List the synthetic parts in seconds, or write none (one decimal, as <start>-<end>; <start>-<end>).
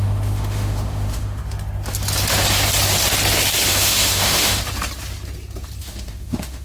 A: 0.0-1.4; 3.7-4.6; 5.8-6.6